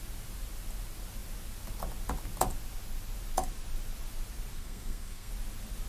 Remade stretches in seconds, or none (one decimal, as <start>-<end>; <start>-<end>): 4.5-5.3